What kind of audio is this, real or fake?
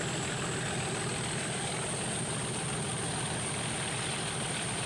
real